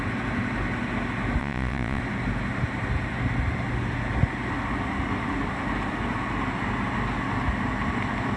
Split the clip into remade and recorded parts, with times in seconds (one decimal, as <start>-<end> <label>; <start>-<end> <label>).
0.0-1.4 recorded; 1.4-2.0 remade; 2.0-8.4 recorded